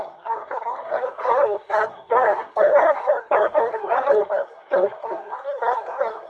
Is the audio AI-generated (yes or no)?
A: yes